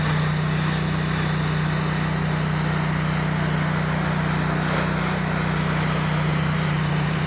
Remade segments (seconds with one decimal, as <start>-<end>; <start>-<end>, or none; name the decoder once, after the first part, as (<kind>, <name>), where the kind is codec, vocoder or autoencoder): 6.3-7.3 (vocoder, BigVGAN v2)